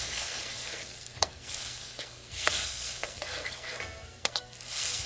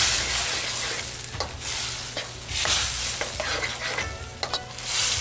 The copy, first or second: first